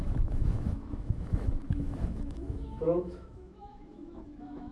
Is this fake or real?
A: fake